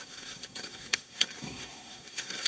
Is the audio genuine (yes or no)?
no